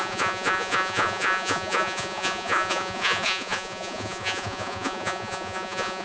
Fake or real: fake